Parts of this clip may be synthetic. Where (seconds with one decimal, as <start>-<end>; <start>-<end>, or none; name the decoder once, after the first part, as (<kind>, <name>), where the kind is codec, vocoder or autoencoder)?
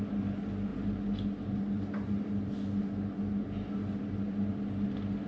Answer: none